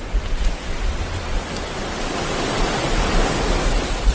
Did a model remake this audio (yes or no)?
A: no